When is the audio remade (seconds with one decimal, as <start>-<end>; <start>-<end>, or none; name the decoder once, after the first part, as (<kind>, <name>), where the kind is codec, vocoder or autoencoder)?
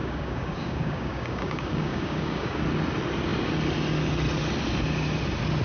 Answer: 0.0-2.6 (codec, DAC)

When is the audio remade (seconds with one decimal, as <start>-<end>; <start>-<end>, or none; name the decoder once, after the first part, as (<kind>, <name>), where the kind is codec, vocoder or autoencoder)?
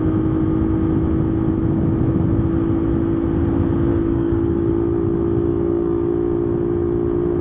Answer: 3.9-4.7 (codec, DAC); 5.5-6.1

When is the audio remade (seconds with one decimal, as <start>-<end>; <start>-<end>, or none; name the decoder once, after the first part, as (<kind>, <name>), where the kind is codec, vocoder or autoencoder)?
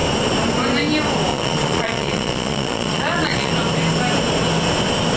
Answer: 1.3-3.5 (vocoder, Vocos)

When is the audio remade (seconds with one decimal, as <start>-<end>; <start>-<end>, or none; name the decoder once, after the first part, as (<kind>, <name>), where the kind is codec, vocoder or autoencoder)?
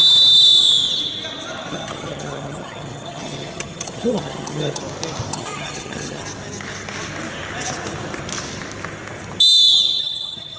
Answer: 1.7-4.8 (vocoder, HiFi-GAN); 5.3-6.2; 10.0-10.6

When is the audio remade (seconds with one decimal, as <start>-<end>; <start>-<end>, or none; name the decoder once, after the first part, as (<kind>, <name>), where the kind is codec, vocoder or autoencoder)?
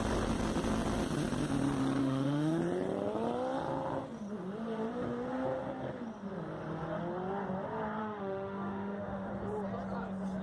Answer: 2.0-2.6 (autoencoder, DAC-VAE); 8.0-9.3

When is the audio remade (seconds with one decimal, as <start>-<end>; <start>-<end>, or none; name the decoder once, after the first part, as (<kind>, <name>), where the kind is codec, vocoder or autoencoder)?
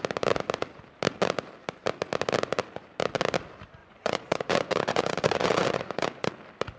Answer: 3.8-6.3 (vocoder, Vocos)